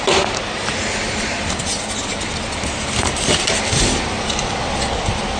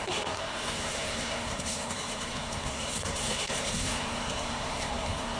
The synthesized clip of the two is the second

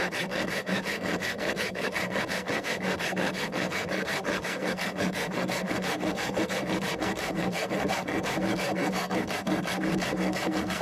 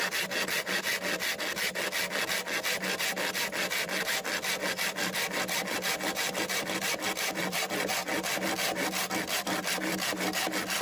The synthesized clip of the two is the first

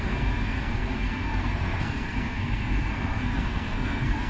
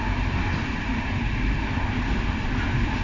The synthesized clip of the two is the first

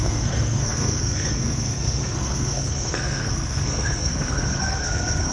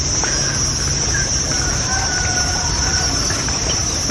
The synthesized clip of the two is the first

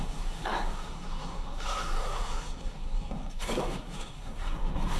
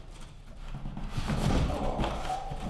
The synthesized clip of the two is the first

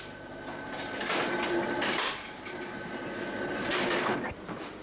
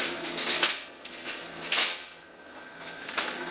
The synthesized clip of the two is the second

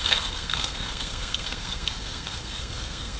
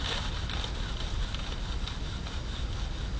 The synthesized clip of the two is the first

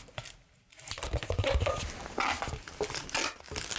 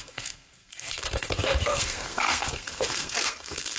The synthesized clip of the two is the second